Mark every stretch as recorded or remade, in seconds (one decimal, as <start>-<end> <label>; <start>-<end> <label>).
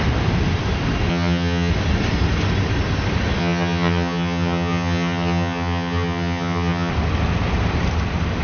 0.0-1.1 recorded; 1.1-1.7 remade; 1.7-3.4 recorded; 3.4-6.9 remade; 6.9-8.4 recorded